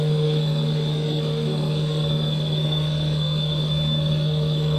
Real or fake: fake